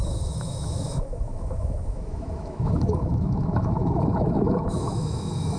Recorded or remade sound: remade